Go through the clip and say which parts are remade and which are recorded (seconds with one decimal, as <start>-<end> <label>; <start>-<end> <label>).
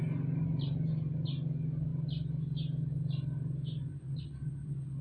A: 0.0-5.0 recorded